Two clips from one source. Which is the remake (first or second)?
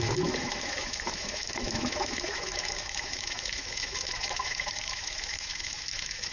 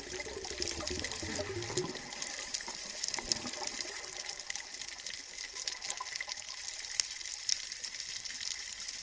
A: first